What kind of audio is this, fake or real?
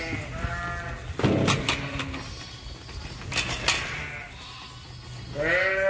real